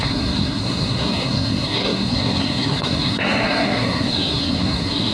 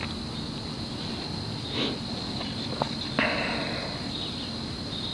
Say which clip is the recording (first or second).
second